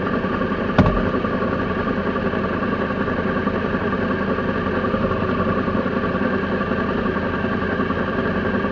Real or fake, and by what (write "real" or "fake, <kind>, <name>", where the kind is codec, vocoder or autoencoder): real